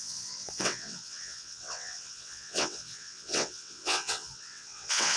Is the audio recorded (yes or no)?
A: no